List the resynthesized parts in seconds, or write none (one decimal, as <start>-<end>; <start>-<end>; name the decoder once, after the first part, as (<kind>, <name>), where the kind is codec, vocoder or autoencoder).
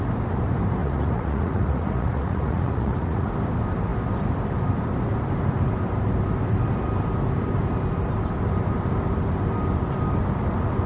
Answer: 0.8-3.3 (vocoder, Vocos)